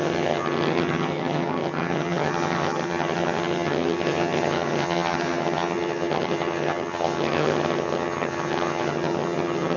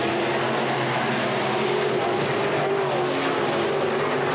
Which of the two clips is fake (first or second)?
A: first